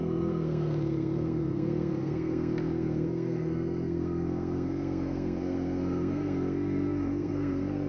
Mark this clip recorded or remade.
remade